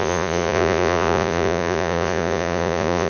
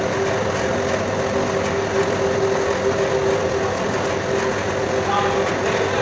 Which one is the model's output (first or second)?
first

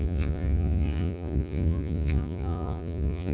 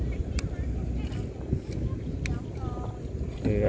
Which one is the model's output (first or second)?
first